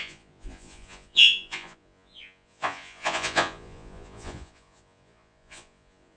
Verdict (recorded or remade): remade